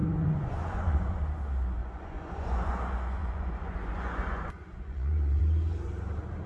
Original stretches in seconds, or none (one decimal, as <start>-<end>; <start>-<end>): 1.2-1.8; 5.4-6.5